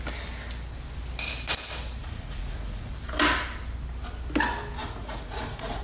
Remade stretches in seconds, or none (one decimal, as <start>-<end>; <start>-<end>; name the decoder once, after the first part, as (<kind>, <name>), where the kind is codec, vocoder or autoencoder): 2.0-2.9 (vocoder, Vocos); 4.8-5.8